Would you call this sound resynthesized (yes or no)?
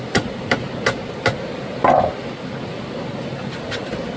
no